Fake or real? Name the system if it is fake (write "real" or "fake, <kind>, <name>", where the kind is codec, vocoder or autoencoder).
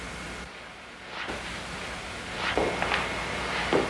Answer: real